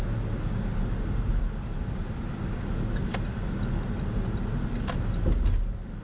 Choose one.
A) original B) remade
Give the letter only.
A